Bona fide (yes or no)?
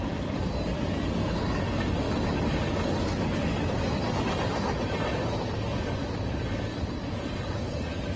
yes